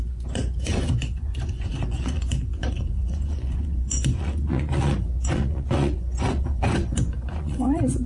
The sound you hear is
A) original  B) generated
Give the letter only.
B